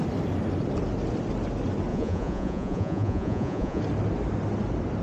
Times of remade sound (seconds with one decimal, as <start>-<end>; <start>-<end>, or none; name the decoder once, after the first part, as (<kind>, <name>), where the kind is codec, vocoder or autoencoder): 1.9-3.8 (vocoder, Vocos)